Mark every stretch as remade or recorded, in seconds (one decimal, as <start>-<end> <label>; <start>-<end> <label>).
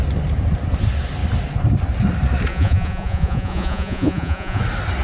0.0-2.5 recorded; 2.5-4.6 remade; 4.6-5.0 recorded